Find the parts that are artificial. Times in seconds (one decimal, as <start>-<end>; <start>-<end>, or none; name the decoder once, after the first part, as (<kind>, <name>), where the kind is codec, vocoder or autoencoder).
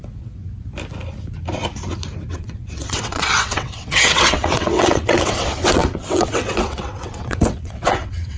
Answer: 0.0-0.4 (vocoder, WaveNeXt); 2.3-8.4